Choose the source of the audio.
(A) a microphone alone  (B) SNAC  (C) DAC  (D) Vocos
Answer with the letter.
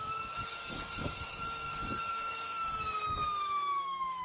C